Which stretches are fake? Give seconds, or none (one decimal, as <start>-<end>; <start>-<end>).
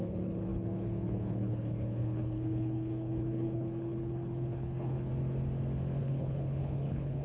0.0-5.1; 6.0-7.2